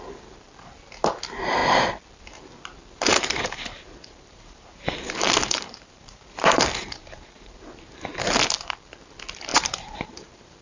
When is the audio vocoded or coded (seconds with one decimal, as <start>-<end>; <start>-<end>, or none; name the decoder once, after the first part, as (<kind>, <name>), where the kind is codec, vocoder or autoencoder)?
3.1-7.9 (vocoder, BigVGAN v2); 9.5-10.6